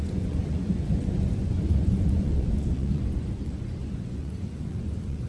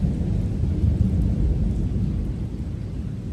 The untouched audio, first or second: second